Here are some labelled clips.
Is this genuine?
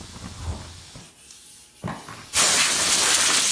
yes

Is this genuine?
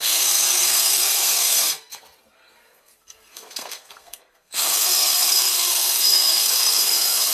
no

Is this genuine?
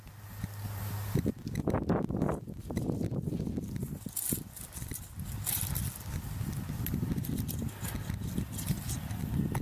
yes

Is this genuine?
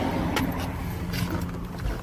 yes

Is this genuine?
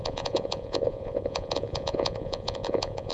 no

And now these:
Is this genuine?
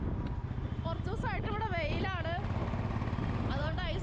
yes